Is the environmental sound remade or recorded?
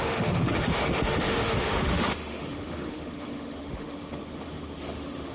remade